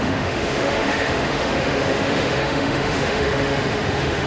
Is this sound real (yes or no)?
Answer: no